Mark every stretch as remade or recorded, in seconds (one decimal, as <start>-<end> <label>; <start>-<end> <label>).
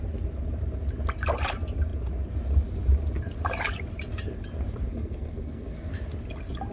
0.0-4.9 recorded; 4.9-5.9 remade; 5.9-6.7 recorded